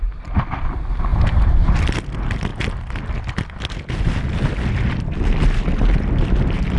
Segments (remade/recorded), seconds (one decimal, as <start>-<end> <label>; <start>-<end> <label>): 0.0-1.1 recorded; 1.1-1.7 remade; 1.7-6.8 recorded